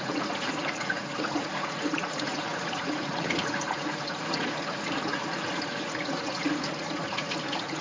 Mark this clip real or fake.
fake